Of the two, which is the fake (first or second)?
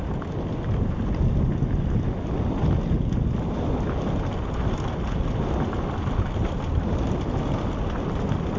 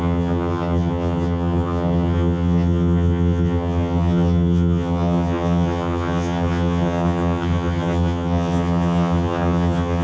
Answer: second